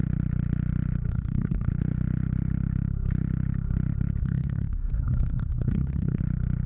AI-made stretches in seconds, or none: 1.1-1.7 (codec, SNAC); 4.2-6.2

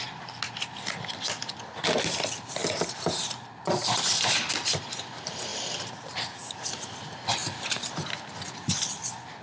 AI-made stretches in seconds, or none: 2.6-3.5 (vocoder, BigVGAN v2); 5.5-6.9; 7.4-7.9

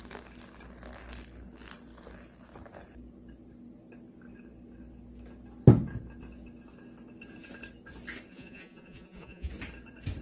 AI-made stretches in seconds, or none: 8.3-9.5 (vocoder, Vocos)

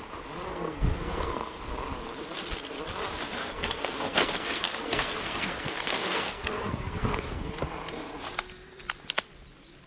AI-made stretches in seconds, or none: 0.5-1.6 (codec, SNAC); 3.4-7.5